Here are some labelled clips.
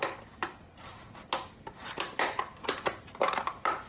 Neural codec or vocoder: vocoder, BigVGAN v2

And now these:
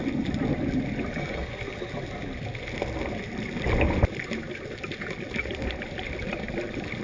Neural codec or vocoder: none